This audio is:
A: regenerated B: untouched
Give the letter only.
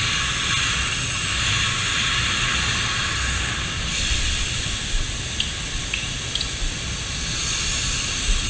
B